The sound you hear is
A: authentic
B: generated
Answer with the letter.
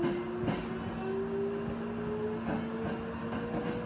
A